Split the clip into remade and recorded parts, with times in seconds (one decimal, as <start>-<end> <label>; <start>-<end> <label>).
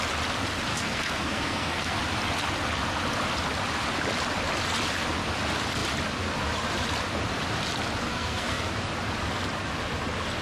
0.0-0.7 recorded; 0.7-2.0 remade; 2.0-8.1 recorded; 8.1-8.7 remade; 8.7-10.4 recorded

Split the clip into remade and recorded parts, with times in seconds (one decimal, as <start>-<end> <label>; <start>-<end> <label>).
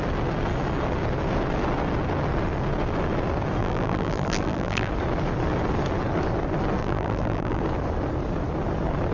0.0-3.6 recorded; 3.6-4.9 remade; 4.9-6.8 recorded; 6.8-7.6 remade; 7.6-9.1 recorded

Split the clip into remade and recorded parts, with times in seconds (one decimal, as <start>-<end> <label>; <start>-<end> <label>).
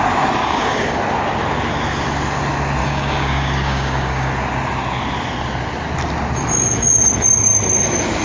0.0-0.4 recorded; 0.4-1.0 remade; 1.0-2.8 recorded; 2.8-4.3 remade; 4.3-8.2 recorded